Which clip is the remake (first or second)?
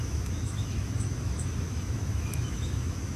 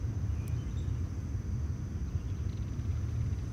first